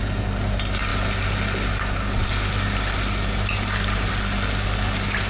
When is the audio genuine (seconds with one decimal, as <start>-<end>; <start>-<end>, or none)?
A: 0.0-5.3